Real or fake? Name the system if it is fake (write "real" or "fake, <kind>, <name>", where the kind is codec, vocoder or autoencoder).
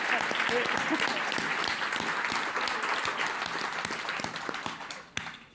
real